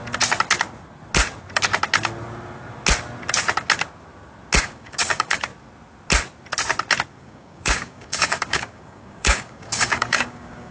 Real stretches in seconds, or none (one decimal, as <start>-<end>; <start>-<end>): 0.0-4.6; 5.5-7.2

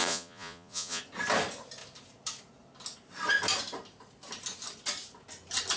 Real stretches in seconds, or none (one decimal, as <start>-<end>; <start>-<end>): 1.0-5.8

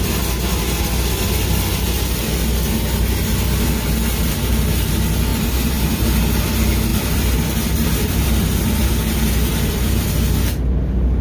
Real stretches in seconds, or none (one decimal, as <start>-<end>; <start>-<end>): 0.0-5.3; 5.9-6.9; 10.1-11.2

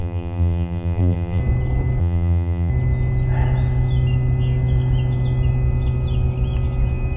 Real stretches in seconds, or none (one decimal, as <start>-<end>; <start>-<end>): 1.4-2.0; 2.7-7.2

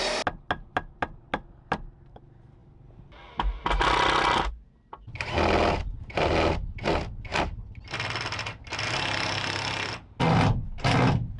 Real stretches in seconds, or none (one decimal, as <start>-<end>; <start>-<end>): 0.0-11.4

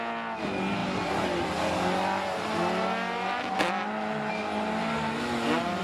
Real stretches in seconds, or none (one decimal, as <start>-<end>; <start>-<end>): 0.0-5.8